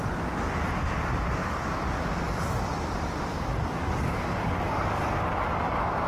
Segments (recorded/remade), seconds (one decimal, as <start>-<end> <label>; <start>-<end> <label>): 0.0-1.4 recorded; 1.4-2.1 remade; 2.1-3.3 recorded; 3.3-5.3 remade; 5.3-6.1 recorded